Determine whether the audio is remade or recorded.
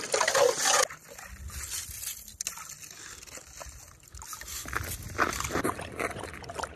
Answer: recorded